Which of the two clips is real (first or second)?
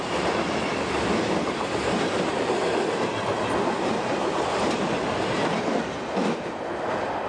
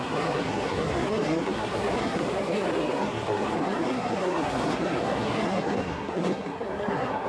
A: first